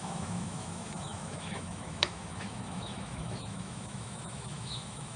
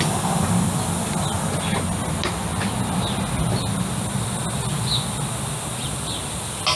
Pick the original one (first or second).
second